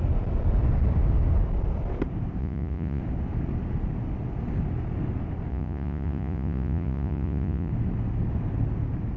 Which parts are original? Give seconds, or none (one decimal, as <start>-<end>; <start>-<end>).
0.0-2.4; 3.0-5.5; 7.7-9.2